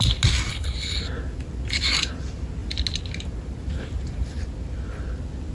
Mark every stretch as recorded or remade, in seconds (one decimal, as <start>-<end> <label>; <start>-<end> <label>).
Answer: 0.0-0.5 recorded; 0.5-1.0 remade; 1.0-5.5 recorded